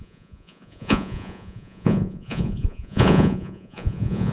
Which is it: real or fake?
fake